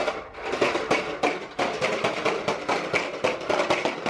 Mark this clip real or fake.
fake